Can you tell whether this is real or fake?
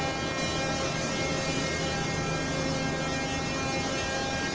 real